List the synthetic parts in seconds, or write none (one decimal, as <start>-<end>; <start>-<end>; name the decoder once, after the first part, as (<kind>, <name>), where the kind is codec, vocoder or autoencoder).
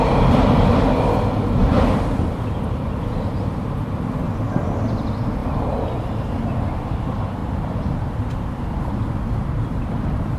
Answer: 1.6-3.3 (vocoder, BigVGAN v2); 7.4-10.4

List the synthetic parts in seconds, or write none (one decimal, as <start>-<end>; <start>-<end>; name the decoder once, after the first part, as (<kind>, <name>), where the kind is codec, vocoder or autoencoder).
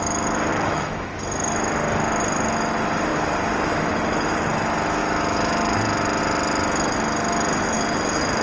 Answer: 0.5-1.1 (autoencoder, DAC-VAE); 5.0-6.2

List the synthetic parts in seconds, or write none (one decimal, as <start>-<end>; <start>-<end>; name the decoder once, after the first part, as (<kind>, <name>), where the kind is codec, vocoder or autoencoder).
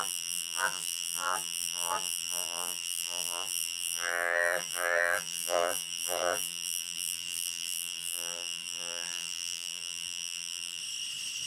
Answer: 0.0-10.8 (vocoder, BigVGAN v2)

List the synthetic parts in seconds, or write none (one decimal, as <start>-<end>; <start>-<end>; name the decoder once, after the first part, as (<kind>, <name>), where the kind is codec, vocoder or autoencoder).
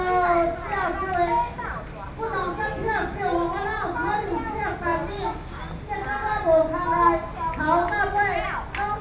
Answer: none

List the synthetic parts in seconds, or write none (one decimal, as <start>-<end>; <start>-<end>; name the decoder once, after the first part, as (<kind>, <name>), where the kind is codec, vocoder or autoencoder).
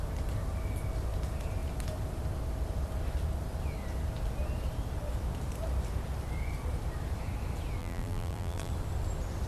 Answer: 7.8-8.7 (vocoder, BigVGAN v2)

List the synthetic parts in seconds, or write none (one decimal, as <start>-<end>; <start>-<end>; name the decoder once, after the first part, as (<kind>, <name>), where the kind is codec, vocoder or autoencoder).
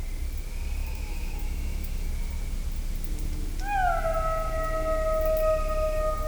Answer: 0.8-2.1 (autoencoder, DAC-VAE)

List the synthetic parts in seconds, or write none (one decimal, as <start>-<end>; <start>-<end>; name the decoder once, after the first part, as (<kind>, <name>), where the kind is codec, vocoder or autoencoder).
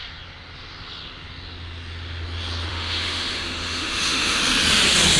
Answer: 2.7-4.4 (autoencoder, DAC-VAE)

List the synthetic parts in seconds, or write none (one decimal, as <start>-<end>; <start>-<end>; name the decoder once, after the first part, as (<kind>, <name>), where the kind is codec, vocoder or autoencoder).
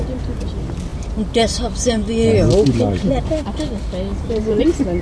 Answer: 4.1-4.6 (vocoder, BigVGAN v2)